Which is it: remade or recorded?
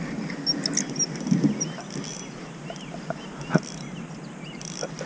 recorded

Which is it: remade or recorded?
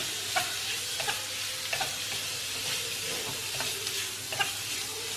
recorded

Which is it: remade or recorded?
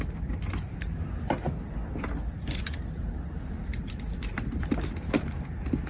recorded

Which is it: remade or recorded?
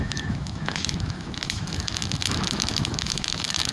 remade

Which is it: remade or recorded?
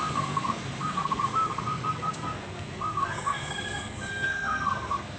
remade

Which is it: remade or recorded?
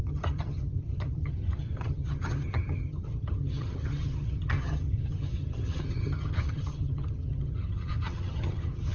remade